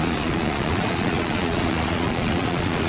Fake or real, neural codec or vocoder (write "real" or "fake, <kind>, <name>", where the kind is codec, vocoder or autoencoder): fake, vocoder, Vocos